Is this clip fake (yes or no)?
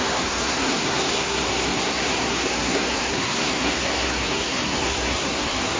yes